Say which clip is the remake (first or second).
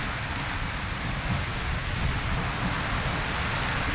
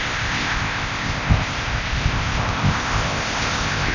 second